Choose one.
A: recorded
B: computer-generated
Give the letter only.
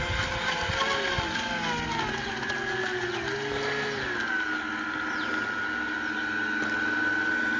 A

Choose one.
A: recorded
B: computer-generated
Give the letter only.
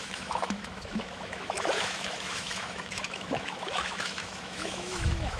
B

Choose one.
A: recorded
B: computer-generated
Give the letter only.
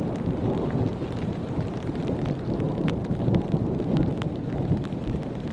B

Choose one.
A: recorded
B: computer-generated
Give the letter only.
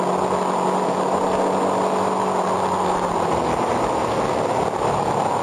A